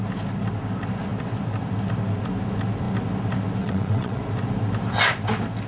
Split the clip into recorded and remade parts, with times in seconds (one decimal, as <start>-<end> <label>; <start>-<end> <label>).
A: 0.0-3.6 recorded; 3.6-4.2 remade; 4.2-5.7 recorded